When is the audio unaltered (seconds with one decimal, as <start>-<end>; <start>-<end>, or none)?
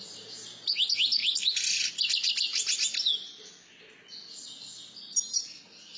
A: 0.0-6.0